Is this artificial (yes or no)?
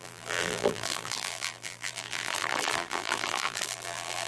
yes